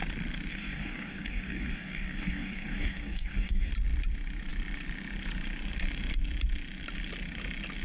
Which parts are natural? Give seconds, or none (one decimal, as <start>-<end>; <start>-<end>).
0.0-0.5; 3.7-7.8